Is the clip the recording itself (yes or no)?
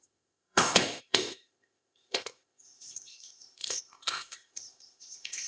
no